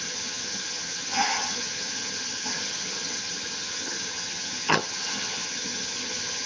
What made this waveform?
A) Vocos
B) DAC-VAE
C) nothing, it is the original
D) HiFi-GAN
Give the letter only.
D